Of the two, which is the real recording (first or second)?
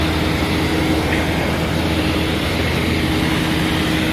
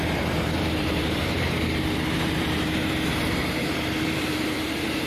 first